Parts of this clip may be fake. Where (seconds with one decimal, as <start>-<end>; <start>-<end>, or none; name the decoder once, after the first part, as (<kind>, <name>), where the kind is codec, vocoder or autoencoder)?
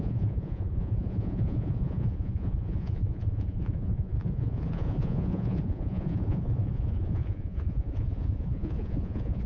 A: 0.0-9.5 (vocoder, Vocos)